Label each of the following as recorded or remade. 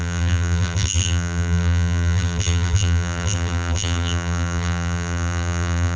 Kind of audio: remade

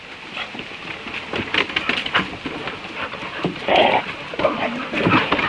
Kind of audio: remade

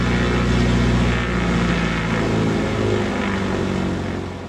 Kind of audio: recorded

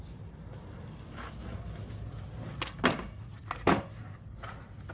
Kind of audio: recorded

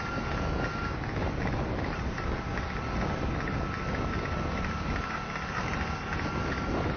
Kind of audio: recorded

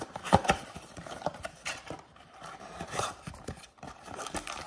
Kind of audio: remade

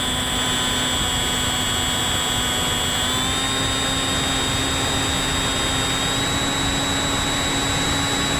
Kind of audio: recorded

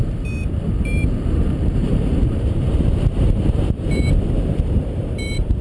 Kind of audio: remade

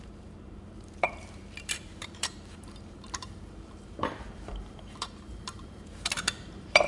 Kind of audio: remade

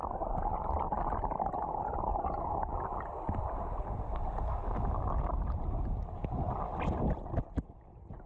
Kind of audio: recorded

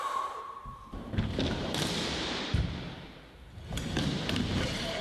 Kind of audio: remade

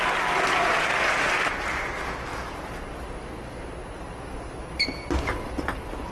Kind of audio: recorded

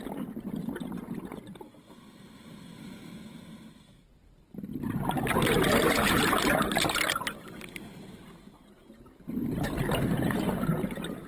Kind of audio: recorded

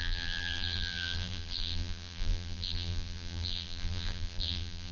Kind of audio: remade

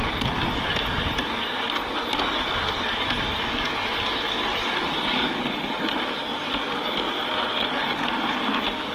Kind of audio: recorded